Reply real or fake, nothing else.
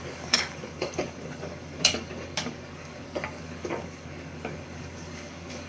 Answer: fake